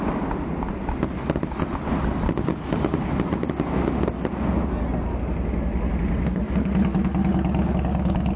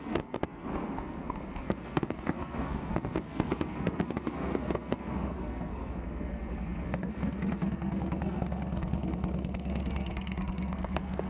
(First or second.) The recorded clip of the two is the first